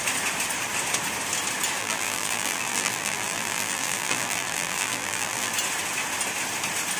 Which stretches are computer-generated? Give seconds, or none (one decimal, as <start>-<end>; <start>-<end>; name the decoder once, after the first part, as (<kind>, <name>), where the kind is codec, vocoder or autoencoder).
1.8-5.5 (vocoder, BigVGAN v2)